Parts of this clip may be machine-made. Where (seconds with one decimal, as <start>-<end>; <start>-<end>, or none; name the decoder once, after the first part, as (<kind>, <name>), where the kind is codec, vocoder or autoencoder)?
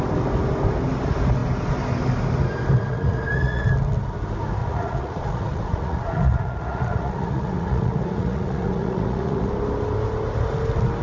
2.9-3.7 (vocoder, Vocos); 4.6-9.5